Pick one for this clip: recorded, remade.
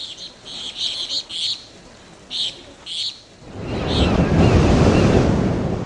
recorded